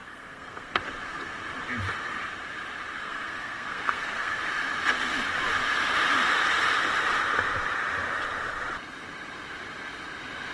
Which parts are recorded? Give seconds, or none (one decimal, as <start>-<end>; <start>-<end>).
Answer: 0.8-3.0; 4.4-10.5